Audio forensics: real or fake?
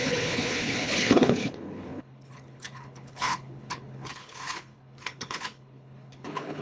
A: fake